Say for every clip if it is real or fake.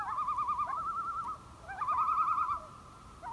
real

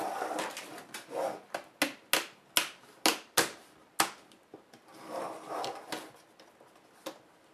real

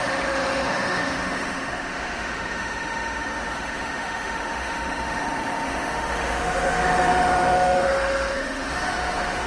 fake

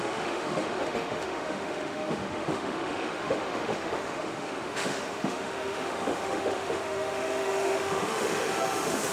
fake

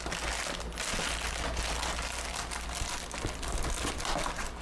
real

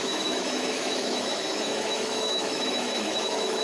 fake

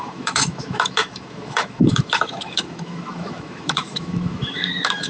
fake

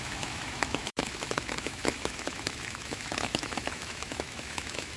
fake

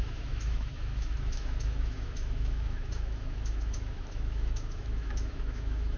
fake